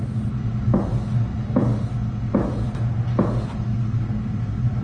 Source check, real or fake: real